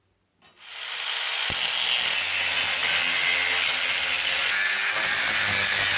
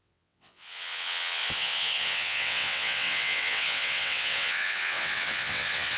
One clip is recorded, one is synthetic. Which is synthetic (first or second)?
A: second